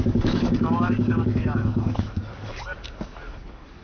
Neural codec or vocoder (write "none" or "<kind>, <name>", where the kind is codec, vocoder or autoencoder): codec, DAC